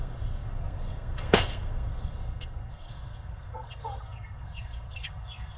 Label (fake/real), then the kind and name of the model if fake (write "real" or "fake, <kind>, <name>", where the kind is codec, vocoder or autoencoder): fake, codec, SNAC